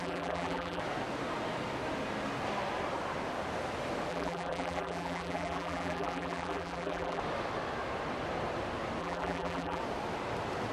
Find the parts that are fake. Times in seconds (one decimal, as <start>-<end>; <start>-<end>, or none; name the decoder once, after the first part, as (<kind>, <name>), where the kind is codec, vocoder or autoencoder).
0.0-0.8 (vocoder, BigVGAN v2); 4.1-7.2; 9.0-9.8